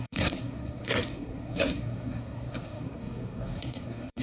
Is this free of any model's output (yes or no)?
no